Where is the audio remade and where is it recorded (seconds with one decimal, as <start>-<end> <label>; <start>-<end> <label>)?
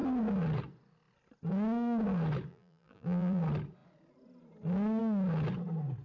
0.0-2.5 recorded; 2.5-3.4 remade; 3.4-6.0 recorded